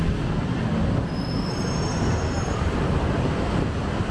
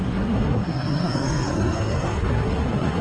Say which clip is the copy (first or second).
second